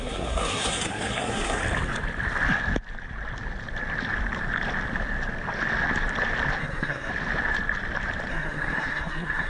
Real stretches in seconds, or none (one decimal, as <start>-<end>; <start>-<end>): 1.6-6.6; 7.1-8.3